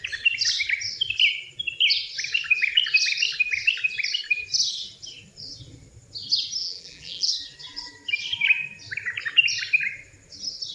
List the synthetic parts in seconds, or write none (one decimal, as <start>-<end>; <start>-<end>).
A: 6.6-7.3